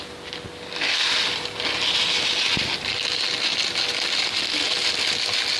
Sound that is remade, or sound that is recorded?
recorded